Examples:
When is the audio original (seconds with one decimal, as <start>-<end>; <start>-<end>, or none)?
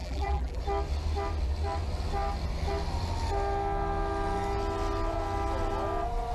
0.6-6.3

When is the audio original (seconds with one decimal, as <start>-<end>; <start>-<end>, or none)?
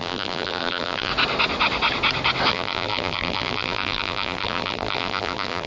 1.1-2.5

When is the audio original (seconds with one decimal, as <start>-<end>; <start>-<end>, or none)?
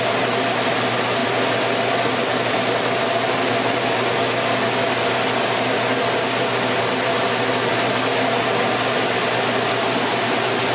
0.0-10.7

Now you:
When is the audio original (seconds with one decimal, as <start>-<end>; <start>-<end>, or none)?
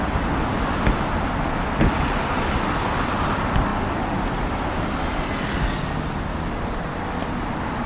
0.0-7.9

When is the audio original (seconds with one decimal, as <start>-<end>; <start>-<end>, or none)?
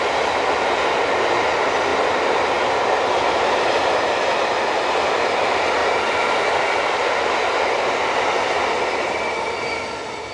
0.0-1.9; 2.5-5.8; 9.2-10.3